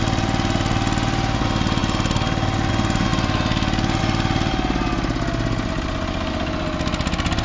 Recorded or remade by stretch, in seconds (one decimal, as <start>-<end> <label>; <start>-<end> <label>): 0.0-7.4 recorded